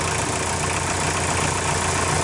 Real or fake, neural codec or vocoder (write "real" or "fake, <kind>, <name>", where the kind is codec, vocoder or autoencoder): real